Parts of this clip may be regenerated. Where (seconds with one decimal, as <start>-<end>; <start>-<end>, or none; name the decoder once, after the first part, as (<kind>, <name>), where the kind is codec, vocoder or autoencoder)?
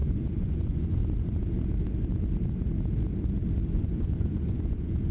0.0-1.0 (vocoder, Vocos); 3.7-5.1